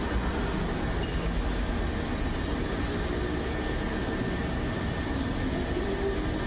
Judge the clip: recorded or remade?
recorded